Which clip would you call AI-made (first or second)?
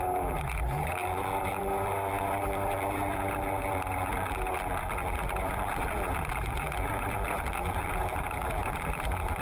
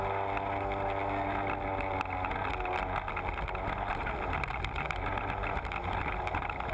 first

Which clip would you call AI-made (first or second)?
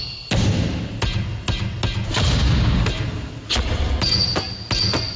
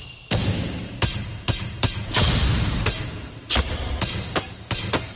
second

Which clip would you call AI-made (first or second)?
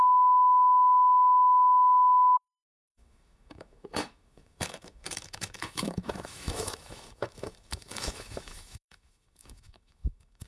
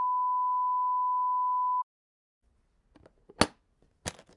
first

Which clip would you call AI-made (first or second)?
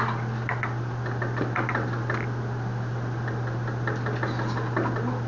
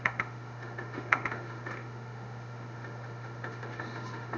second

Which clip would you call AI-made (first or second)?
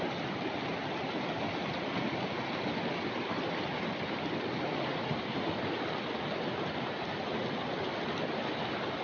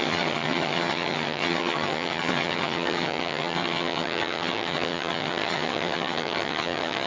second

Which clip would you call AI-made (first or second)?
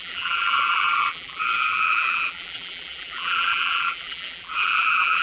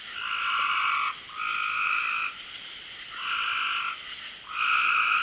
first